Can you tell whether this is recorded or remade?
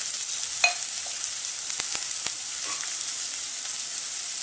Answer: recorded